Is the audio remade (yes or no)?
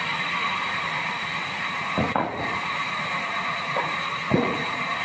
yes